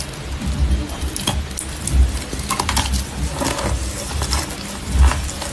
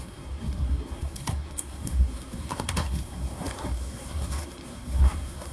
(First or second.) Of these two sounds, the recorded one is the first